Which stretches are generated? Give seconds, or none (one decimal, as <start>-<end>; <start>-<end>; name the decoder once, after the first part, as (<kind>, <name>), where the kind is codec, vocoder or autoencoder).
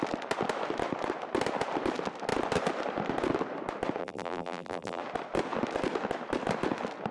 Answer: 4.0-5.0 (vocoder, BigVGAN v2)